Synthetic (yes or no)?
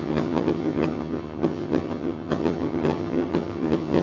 yes